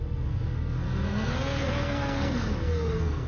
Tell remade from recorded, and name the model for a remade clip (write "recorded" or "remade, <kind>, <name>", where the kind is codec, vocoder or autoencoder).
remade, codec, SNAC